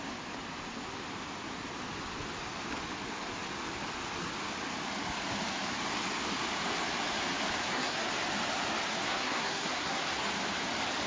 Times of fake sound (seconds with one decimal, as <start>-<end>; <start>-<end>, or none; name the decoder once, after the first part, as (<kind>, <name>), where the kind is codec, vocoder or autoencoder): 7.6-8.1 (codec, SNAC); 8.9-10.2